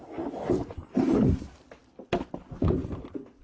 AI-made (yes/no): no